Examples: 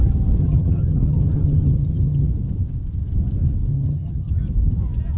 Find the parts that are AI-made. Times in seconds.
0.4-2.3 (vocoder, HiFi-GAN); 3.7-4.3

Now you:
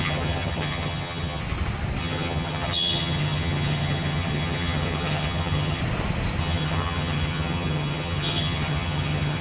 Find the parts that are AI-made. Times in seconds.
0.0-1.4 (vocoder, HiFi-GAN); 2.0-5.8; 6.4-9.4

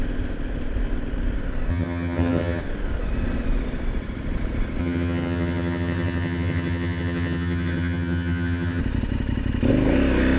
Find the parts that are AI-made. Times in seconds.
1.7-2.6 (vocoder, HiFi-GAN); 4.8-8.8